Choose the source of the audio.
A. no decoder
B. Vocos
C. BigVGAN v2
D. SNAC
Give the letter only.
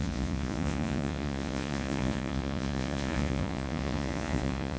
B